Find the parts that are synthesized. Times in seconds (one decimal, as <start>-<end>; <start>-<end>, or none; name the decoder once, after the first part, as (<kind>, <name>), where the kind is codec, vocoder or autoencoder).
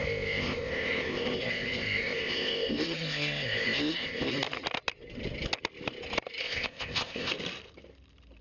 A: 0.0-4.3 (codec, ZipCodec); 6.4-7.3